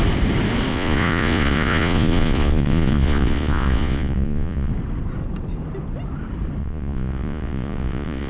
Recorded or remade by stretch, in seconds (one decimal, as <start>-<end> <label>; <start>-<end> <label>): 0.0-0.7 recorded; 0.7-4.7 remade; 4.7-6.6 recorded; 6.6-8.3 remade